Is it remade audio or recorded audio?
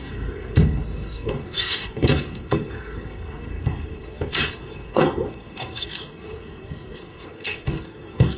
remade